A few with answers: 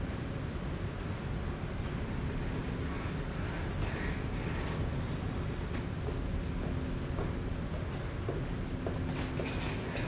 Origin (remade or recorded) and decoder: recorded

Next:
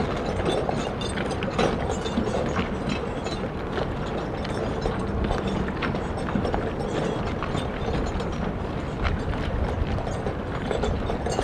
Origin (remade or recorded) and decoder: recorded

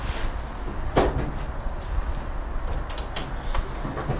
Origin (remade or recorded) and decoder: recorded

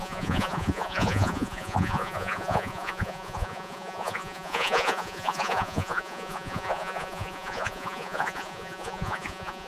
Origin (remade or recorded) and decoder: remade, vocoder, Vocos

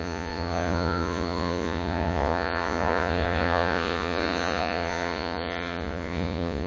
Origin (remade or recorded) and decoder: remade, vocoder, Vocos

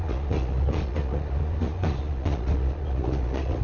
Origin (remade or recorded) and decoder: remade, vocoder, Vocos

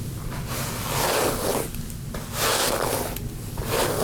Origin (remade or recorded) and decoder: recorded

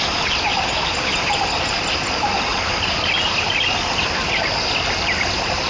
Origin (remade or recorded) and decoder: recorded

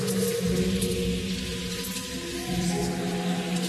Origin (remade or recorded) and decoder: recorded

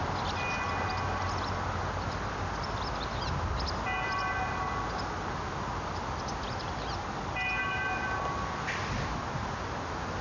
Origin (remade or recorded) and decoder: recorded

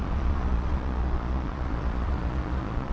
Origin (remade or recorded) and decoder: remade, vocoder, Vocos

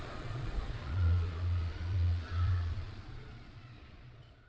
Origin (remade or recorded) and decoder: remade, vocoder, Vocos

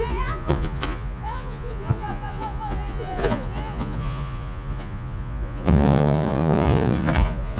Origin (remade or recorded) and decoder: remade, vocoder, Vocos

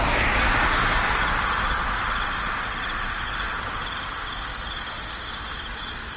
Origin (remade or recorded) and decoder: recorded